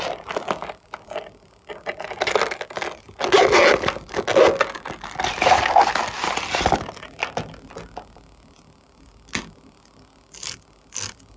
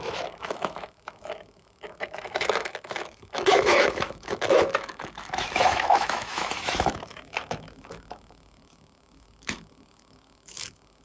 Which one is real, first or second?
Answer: first